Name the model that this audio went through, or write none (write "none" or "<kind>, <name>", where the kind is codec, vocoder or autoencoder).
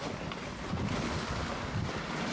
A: none